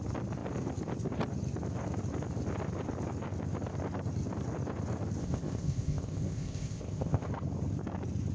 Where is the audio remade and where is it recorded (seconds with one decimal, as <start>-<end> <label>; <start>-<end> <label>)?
0.0-5.2 recorded; 5.2-7.3 remade; 7.3-8.3 recorded